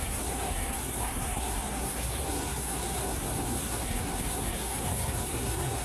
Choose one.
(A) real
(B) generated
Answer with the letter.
B